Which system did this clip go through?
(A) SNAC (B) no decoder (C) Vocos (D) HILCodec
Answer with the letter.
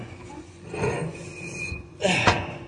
C